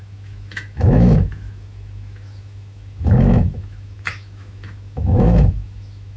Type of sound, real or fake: fake